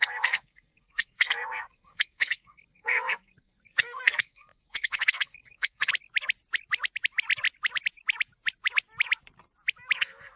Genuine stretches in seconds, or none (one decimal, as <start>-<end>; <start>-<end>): 5.9-10.0